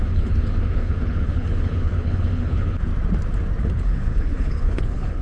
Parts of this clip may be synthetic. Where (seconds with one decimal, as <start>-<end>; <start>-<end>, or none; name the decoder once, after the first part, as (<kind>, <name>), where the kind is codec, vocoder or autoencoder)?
0.0-2.9 (codec, HILCodec); 3.6-5.2